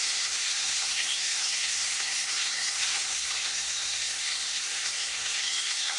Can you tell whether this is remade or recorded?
remade